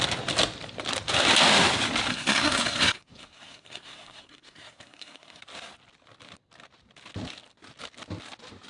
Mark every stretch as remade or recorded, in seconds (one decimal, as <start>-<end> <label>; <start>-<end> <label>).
0.0-2.1 recorded; 2.1-5.4 remade; 5.4-8.7 recorded